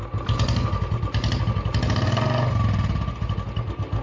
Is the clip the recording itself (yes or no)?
yes